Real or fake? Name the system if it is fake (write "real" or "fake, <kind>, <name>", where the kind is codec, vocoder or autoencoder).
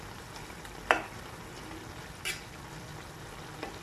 real